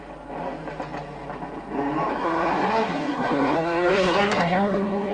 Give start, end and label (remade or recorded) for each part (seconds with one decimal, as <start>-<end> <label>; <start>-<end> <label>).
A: 0.0-2.1 recorded; 2.1-5.1 remade